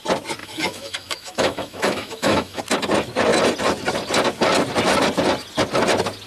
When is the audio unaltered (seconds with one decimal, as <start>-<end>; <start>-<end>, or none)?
0.0-0.4; 2.6-6.3